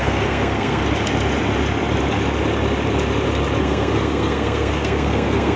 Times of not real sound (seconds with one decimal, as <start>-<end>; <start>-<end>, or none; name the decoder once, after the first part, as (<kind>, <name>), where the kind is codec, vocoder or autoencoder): 0.0-0.8 (codec, SNAC); 3.6-5.6